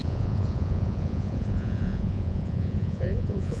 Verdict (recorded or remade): remade